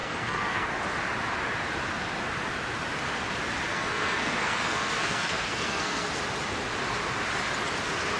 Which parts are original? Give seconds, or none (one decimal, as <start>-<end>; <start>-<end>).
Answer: 0.7-3.7; 6.2-8.2